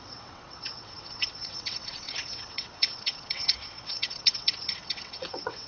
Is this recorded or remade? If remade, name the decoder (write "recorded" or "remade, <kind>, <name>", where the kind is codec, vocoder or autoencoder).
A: remade, vocoder, WaveNeXt